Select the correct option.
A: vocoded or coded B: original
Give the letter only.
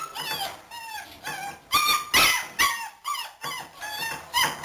B